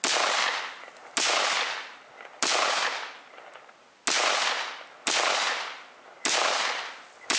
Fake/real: real